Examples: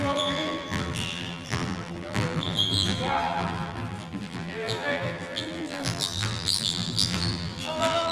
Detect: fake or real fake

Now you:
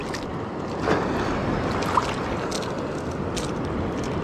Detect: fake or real real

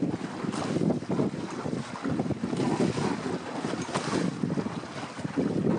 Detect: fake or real real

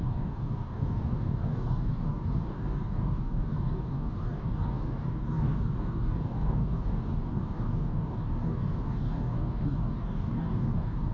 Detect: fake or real fake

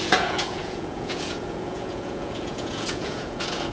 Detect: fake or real fake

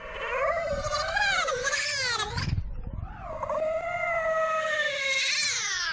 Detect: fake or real real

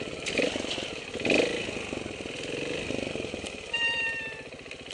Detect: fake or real real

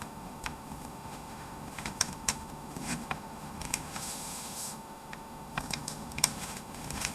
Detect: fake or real fake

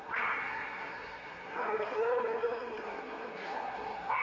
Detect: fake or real fake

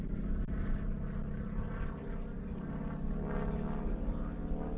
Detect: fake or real real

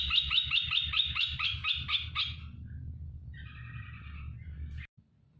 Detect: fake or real real